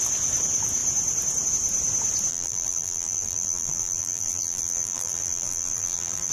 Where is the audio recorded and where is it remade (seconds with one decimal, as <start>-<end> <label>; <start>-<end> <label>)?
0.0-2.3 recorded; 2.3-6.3 remade